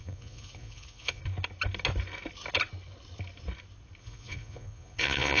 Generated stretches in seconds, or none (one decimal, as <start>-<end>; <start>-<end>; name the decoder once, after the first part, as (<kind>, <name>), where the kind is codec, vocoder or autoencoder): 0.0-1.2 (vocoder, Vocos); 4.0-5.4